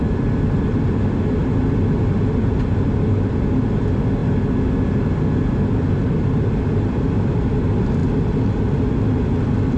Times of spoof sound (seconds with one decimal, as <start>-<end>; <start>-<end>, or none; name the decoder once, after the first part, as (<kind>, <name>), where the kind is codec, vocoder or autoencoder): 0.0-4.2 (vocoder, BigVGAN v2); 6.0-8.0

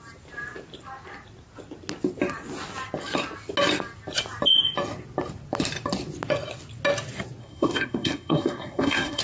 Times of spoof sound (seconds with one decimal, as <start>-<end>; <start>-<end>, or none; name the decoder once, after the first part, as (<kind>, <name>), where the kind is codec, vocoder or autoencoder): 7.4-9.2 (codec, SNAC)

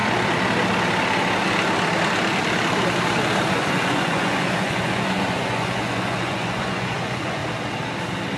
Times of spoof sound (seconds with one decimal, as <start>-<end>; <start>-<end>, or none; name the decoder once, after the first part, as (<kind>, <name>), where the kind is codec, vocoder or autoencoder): 3.5-7.4 (vocoder, Vocos)

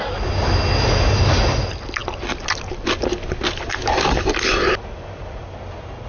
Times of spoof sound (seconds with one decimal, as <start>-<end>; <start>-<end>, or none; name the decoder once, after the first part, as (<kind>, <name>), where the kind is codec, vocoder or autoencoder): none

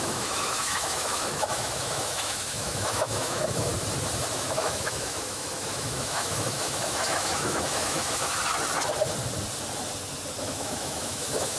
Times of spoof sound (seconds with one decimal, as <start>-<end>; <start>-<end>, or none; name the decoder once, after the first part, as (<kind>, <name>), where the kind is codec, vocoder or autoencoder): 0.0-3.7 (autoencoder, DAC-VAE); 4.3-8.4; 10.4-11.6